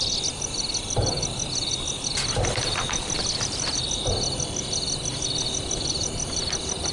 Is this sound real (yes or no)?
no